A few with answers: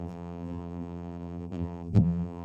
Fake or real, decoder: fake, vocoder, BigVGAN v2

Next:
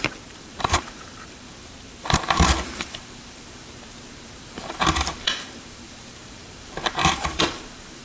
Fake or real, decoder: fake, vocoder, BigVGAN v2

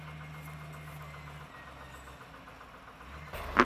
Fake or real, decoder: real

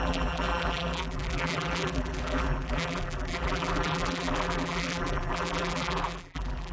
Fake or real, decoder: fake, vocoder, BigVGAN v2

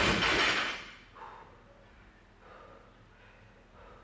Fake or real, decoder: real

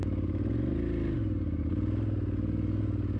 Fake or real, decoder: real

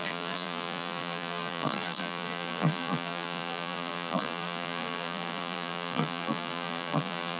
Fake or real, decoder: fake, vocoder, BigVGAN v2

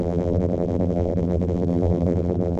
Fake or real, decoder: fake, vocoder, BigVGAN v2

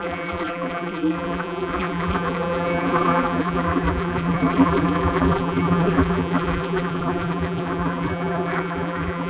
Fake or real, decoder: fake, vocoder, BigVGAN v2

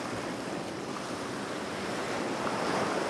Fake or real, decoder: real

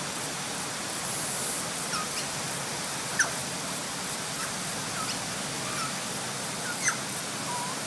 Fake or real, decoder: real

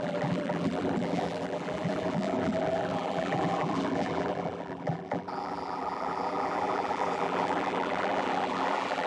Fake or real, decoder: fake, vocoder, BigVGAN v2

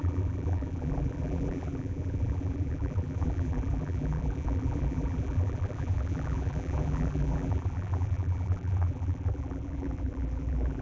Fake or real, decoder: fake, vocoder, BigVGAN v2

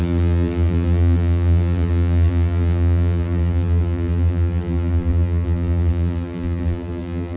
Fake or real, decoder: fake, vocoder, BigVGAN v2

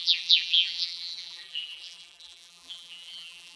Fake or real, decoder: fake, vocoder, BigVGAN v2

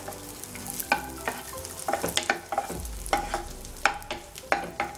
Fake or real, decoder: real